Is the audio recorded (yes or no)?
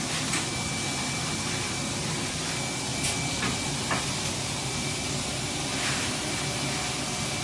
yes